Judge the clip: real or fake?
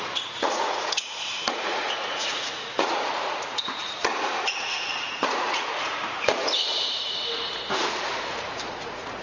fake